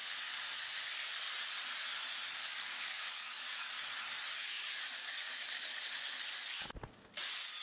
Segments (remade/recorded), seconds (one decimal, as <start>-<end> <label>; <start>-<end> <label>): 0.0-2.4 recorded; 2.4-3.7 remade; 3.7-4.3 recorded; 4.3-5.8 remade; 5.8-7.6 recorded